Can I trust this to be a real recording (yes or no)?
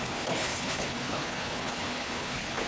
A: no